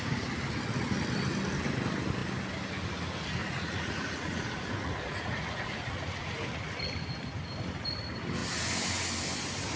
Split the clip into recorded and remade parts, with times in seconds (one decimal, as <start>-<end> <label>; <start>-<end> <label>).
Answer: 0.0-3.4 recorded; 3.4-6.8 remade; 6.8-9.8 recorded